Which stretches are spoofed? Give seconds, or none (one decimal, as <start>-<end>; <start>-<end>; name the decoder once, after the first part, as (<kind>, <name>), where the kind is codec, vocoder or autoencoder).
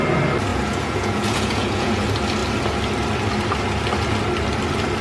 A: 0.5-2.0 (vocoder, Vocos)